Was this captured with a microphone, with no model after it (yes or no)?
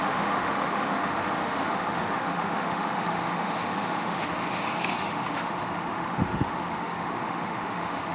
no